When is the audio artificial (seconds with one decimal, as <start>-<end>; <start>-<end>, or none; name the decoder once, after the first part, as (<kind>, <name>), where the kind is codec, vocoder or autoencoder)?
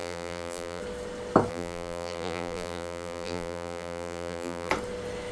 0.0-0.8 (vocoder, BigVGAN v2); 1.5-4.7